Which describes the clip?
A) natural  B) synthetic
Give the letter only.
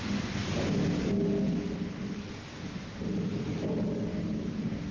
A